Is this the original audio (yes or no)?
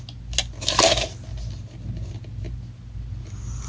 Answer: yes